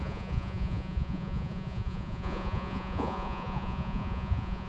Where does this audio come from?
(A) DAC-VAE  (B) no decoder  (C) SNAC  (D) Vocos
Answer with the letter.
D